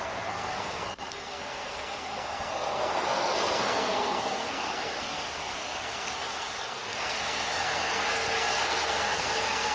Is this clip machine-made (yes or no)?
yes